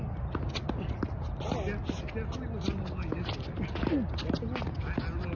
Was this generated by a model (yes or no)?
no